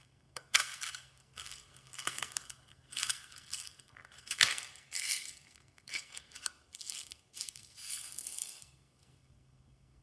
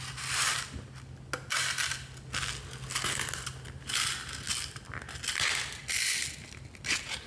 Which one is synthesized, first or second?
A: first